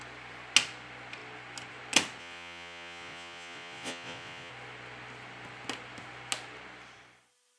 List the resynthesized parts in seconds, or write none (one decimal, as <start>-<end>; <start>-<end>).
2.2-4.5